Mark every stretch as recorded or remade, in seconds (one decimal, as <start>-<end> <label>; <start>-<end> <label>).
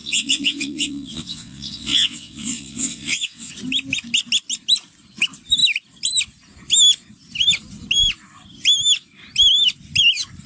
0.0-3.5 remade; 3.5-10.5 recorded